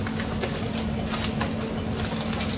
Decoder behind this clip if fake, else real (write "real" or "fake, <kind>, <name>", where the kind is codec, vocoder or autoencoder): real